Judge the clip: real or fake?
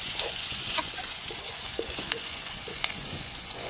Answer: fake